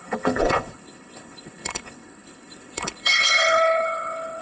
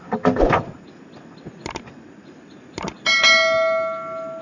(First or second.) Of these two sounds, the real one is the second